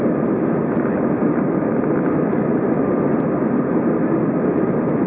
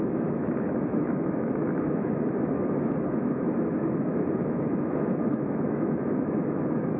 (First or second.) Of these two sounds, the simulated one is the second